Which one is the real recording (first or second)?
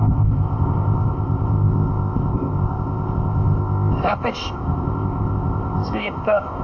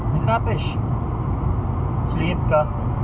second